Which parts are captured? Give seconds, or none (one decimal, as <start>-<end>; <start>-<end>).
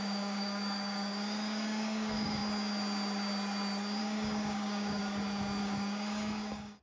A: 2.4-4.0; 5.0-5.6